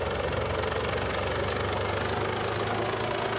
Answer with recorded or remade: recorded